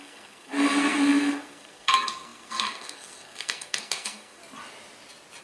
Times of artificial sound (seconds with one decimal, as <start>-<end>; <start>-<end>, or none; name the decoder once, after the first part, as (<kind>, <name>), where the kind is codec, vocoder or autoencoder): 0.0-4.4 (codec, SNAC)